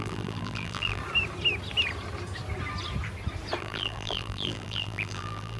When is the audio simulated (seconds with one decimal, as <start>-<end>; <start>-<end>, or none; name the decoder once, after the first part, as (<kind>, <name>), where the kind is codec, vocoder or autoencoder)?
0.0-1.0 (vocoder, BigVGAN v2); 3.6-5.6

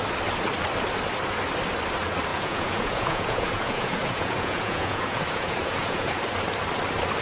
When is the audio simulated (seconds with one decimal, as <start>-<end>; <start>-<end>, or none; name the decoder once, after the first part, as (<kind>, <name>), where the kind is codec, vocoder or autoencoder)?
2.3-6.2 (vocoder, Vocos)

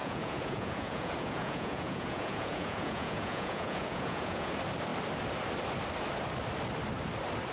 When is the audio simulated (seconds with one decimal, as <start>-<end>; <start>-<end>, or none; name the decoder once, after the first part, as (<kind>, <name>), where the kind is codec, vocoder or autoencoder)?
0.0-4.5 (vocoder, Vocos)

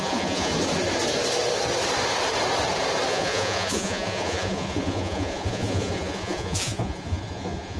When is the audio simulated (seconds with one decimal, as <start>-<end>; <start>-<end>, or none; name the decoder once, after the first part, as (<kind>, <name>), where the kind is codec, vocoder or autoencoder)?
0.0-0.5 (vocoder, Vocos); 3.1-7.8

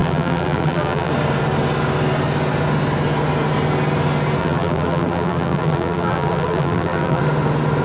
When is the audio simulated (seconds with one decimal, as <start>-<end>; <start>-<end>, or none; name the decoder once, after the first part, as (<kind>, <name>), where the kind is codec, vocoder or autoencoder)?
0.0-1.1 (vocoder, BigVGAN v2); 4.4-7.2

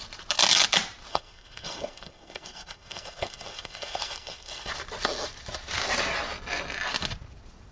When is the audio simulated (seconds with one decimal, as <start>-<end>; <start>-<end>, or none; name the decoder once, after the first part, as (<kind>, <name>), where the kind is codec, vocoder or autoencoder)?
1.1-4.7 (codec, SNAC)

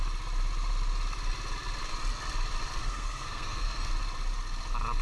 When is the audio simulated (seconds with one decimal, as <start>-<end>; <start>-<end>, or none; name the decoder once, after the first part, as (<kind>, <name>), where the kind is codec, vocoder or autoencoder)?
2.8-3.9 (codec, SNAC)